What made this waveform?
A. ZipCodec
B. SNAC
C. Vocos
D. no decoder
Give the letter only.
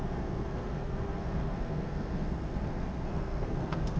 B